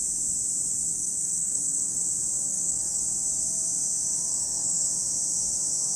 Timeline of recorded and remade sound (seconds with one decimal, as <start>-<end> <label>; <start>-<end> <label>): 0.0-0.9 recorded; 0.9-2.1 remade; 2.1-2.5 recorded; 2.5-3.0 remade; 3.0-4.3 recorded; 4.3-4.9 remade; 4.9-6.0 recorded